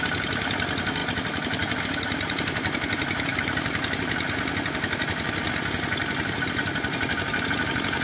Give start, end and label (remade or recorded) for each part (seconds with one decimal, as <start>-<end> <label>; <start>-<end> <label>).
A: 0.0-8.0 recorded